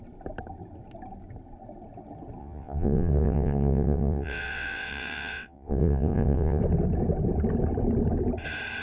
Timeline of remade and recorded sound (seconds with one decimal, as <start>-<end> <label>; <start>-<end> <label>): 0.0-2.4 recorded; 2.4-6.6 remade; 6.6-8.8 recorded

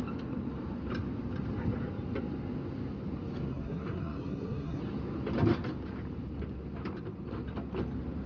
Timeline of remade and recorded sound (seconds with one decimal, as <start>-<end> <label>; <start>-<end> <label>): 0.0-3.5 recorded; 3.5-4.8 remade; 4.8-8.3 recorded

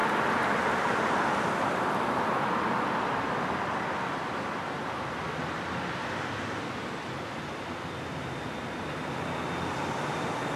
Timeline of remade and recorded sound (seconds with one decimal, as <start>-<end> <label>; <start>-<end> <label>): 0.0-0.5 remade; 0.5-10.6 recorded

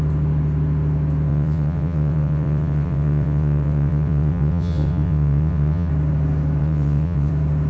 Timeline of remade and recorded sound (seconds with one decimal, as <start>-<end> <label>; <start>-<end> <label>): 0.0-1.3 recorded; 1.3-5.9 remade; 5.9-6.6 recorded; 6.6-7.3 remade; 7.3-7.7 recorded

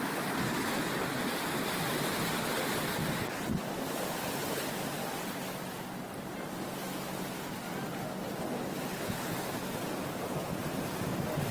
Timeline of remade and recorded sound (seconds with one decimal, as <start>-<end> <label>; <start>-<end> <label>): 0.0-3.0 remade; 3.0-3.9 recorded; 3.9-6.8 remade; 6.8-11.5 recorded